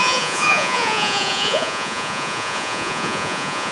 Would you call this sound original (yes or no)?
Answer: no